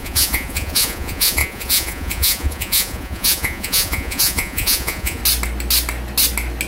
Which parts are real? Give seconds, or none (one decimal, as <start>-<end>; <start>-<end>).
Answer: 5.2-6.7

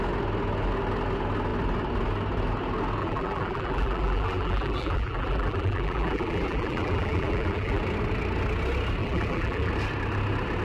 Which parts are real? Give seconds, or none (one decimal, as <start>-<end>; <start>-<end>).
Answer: 0.0-3.0; 7.8-9.0; 9.7-10.6

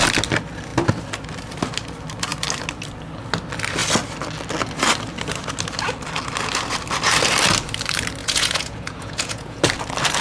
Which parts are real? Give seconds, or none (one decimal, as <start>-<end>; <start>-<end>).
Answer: 0.0-8.2; 9.6-10.2

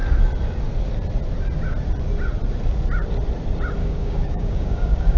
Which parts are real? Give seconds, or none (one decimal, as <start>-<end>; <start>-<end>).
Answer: 0.0-3.8

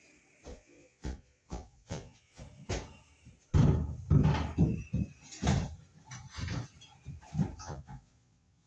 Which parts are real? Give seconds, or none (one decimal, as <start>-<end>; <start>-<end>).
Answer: 0.0-0.5; 2.4-7.6

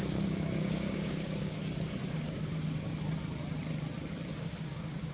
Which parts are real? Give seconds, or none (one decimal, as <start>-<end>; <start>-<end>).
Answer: 1.6-2.1; 2.9-4.4

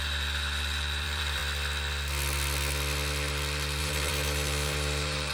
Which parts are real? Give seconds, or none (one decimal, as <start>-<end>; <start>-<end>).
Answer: 1.4-3.8

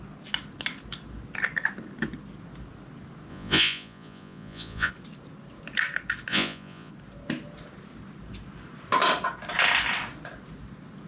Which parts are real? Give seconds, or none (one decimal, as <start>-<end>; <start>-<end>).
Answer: 0.0-3.3; 4.9-6.3; 6.9-11.1